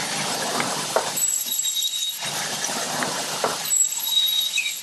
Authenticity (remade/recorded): remade